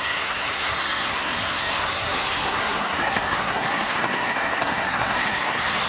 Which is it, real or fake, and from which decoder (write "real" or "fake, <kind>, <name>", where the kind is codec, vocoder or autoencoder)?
fake, codec, SNAC